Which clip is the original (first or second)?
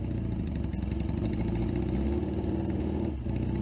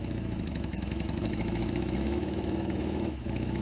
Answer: first